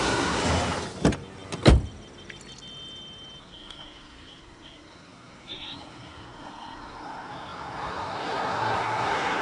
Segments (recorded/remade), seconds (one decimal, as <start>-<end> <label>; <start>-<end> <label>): 0.0-0.4 remade; 0.4-3.4 recorded; 3.4-9.4 remade